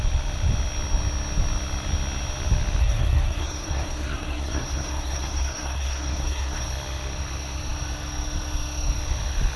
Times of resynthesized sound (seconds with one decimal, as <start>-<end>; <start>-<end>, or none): 2.8-6.7